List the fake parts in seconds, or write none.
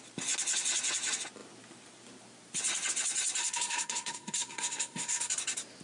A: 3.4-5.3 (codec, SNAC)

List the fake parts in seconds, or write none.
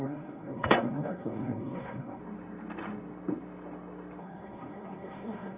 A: 0.0-2.2 (codec, SNAC); 4.2-5.6